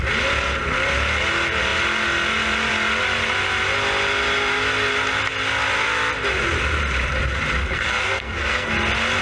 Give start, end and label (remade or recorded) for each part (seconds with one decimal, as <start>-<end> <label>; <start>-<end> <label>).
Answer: 0.0-7.6 recorded; 7.6-8.7 remade; 8.7-9.2 recorded